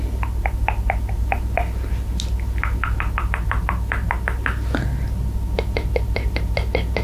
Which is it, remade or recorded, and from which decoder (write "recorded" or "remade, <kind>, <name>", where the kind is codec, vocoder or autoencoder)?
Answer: recorded